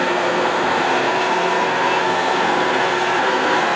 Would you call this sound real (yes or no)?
no